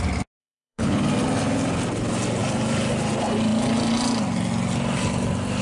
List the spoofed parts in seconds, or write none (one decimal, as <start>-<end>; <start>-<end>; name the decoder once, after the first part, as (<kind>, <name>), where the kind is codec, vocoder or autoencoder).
0.4-1.0 (codec, HILCodec)